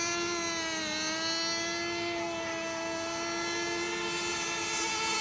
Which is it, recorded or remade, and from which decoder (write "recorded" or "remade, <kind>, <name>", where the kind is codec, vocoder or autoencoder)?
recorded